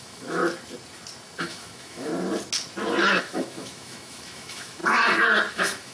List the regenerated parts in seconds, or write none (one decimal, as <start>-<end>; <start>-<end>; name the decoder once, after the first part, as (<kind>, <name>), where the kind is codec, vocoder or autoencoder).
0.0-0.4 (autoencoder, DAC-VAE); 1.4-2.1; 3.2-4.8; 5.5-5.9